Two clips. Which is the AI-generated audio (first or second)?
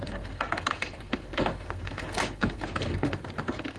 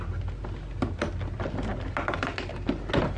first